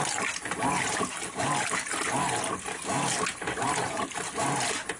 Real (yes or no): yes